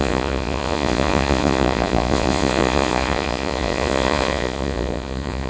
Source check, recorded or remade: remade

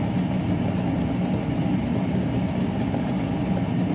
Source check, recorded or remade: recorded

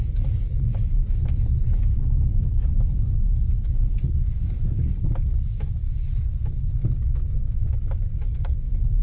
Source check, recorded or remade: recorded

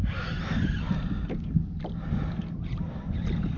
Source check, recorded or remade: recorded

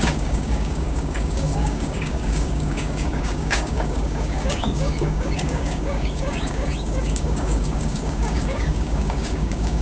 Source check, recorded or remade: remade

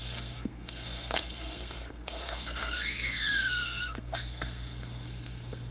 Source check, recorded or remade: remade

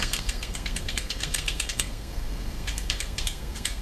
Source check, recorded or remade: remade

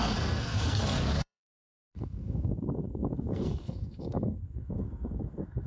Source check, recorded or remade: remade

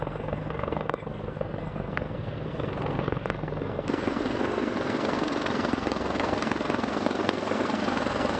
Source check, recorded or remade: remade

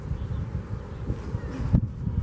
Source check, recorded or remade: recorded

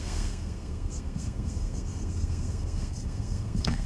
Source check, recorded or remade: remade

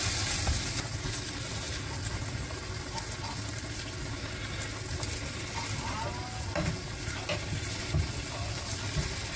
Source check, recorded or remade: recorded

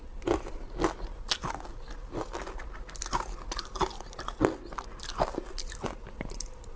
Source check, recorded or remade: recorded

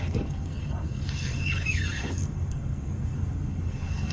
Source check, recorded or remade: remade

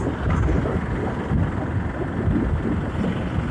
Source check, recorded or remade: recorded